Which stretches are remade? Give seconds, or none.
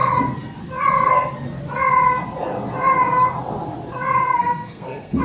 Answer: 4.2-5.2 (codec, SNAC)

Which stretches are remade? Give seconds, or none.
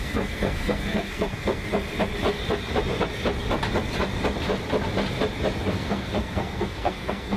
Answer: 0.0-1.7 (codec, SNAC); 5.7-7.4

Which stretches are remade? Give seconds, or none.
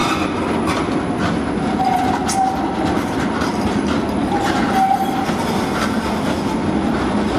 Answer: none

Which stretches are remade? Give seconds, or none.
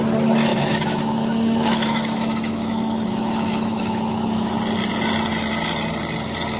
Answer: 0.5-4.5 (autoencoder, DAC-VAE)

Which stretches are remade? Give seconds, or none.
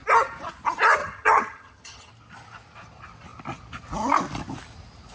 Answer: 1.0-2.1 (vocoder, HiFi-GAN)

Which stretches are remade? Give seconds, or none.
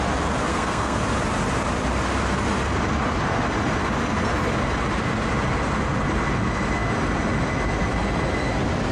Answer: 0.5-1.0 (codec, SNAC)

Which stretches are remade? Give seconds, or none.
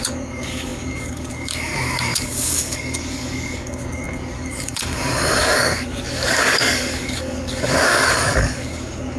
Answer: 0.0-9.2 (codec, DAC)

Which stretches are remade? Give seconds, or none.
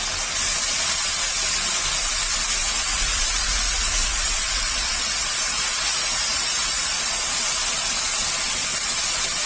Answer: 2.6-7.2 (vocoder, Vocos)